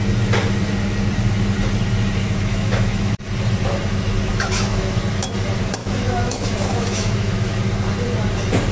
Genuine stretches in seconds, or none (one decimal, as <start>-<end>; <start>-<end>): 0.0-2.2; 3.2-4.3; 5.0-5.8; 7.6-8.7